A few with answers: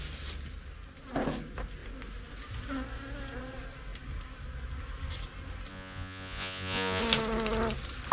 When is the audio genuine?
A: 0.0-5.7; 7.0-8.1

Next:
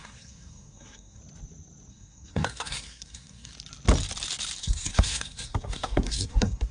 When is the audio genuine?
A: 1.2-1.9; 3.5-4.6